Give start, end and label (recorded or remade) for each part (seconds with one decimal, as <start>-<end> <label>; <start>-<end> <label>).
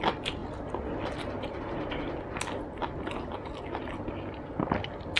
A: 0.0-0.4 recorded; 0.4-1.6 remade; 1.6-5.2 recorded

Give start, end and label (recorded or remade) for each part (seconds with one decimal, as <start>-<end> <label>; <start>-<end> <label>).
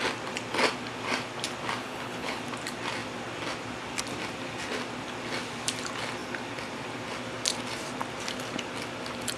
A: 0.0-1.8 recorded; 1.8-2.4 remade; 2.4-9.4 recorded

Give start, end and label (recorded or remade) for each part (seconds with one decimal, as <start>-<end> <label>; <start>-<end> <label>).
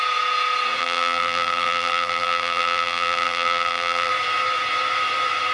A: 0.0-0.8 recorded; 0.8-4.1 remade; 4.1-5.5 recorded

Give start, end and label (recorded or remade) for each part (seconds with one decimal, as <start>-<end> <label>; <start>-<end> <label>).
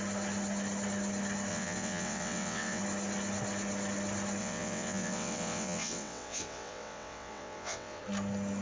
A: 0.0-1.5 recorded; 1.5-2.8 remade; 2.8-4.4 recorded; 4.4-8.0 remade; 8.0-8.6 recorded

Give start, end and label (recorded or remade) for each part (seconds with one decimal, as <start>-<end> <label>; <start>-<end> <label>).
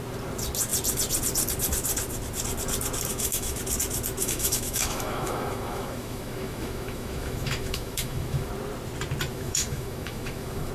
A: 0.0-3.1 recorded; 3.1-3.6 remade; 3.6-4.2 recorded; 4.2-8.5 remade; 8.5-9.3 recorded; 9.3-10.7 remade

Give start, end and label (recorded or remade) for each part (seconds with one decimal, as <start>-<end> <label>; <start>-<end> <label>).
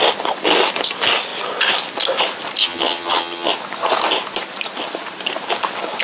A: 0.0-2.6 recorded; 2.6-3.5 remade; 3.5-6.0 recorded